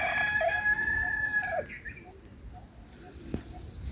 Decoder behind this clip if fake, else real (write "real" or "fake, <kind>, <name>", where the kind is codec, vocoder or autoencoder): real